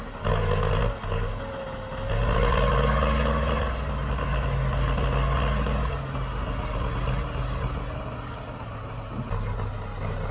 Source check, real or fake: real